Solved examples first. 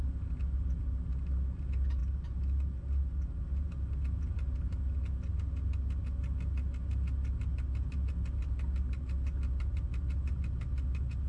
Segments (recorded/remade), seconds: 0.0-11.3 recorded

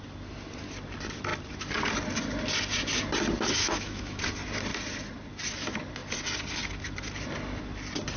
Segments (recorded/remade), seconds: 0.0-3.6 recorded; 3.6-4.2 remade; 4.2-8.2 recorded